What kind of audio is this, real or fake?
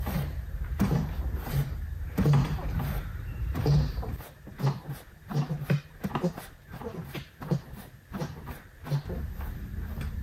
fake